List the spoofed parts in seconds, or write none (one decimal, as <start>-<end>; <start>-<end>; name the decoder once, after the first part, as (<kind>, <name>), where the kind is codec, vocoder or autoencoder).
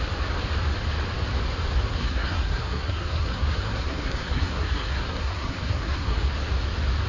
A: 2.0-6.3 (codec, SNAC)